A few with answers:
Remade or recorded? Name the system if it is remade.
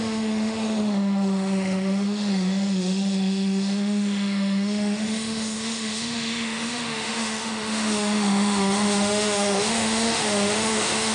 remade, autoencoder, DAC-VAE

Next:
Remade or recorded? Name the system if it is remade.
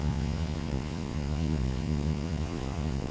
remade, vocoder, Vocos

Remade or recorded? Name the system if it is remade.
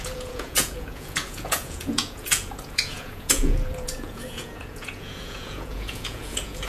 remade, vocoder, Vocos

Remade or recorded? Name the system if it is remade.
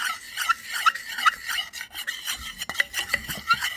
recorded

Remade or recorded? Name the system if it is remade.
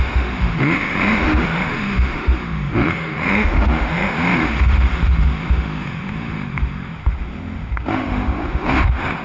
remade, autoencoder, DAC-VAE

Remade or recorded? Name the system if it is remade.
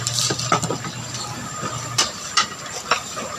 remade, vocoder, BigVGAN v2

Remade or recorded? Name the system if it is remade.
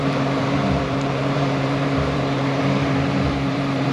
remade, vocoder, BigVGAN v2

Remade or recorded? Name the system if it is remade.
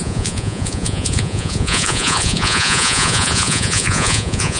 remade, vocoder, Vocos